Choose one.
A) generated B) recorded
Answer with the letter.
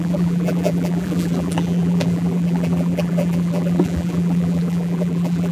A